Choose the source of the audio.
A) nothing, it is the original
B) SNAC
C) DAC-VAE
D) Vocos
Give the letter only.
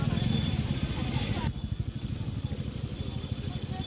A